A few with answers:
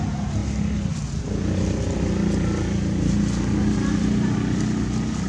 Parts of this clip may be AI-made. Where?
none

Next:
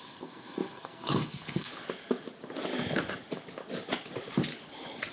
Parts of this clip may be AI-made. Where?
0.0-1.7 (codec, SNAC)

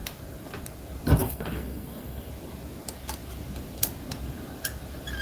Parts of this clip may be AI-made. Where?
1.2-2.3 (codec, SNAC)

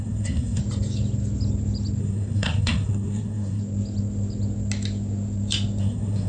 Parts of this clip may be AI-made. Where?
0.0-0.6 (codec, SNAC); 2.0-3.6; 5.8-6.3

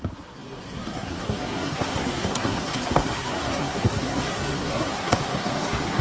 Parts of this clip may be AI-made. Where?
0.0-6.0 (codec, SNAC)